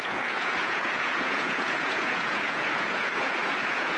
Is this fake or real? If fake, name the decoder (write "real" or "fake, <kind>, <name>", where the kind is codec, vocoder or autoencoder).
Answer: fake, vocoder, Vocos